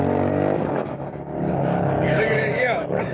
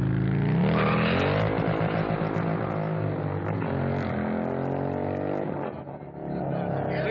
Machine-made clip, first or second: first